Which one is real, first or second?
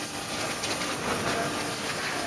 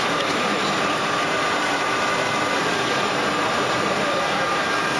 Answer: first